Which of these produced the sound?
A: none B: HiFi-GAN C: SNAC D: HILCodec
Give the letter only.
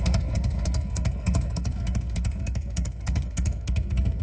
C